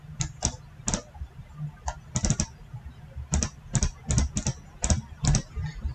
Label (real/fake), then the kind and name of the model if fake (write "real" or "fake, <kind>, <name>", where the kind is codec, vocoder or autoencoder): real